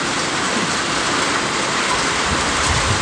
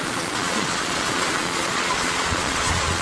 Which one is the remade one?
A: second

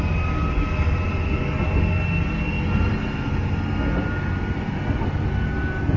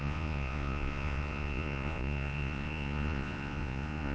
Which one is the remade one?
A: second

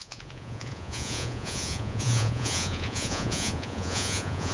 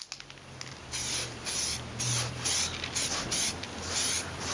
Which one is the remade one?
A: first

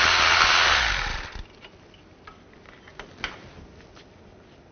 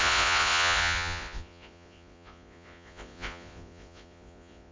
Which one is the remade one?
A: second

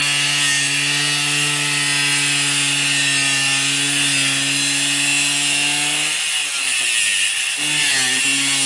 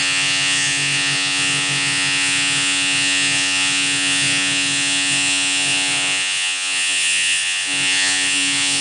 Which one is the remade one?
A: second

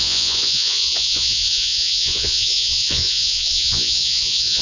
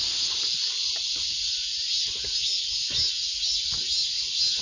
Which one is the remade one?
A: first